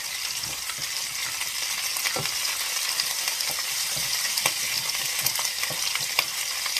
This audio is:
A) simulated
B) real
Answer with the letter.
B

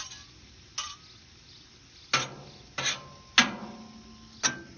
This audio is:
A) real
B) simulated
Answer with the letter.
A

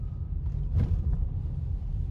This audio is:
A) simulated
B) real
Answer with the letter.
B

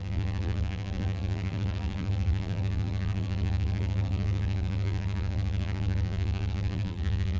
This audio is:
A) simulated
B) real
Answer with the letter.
A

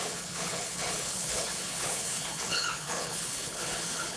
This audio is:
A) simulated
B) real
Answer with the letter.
A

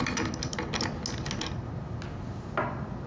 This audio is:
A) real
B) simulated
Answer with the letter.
A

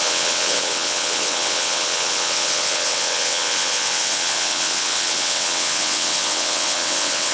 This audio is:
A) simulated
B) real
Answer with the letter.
A